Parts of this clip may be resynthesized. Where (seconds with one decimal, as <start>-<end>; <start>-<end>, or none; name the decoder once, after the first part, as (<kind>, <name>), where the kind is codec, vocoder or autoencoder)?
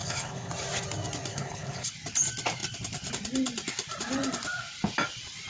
0.0-0.5 (codec, HILCodec); 1.3-1.9